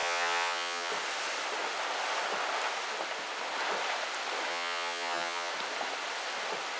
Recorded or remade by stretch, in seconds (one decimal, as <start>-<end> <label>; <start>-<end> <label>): 0.0-0.9 remade; 0.9-4.5 recorded; 4.5-5.5 remade; 5.5-6.8 recorded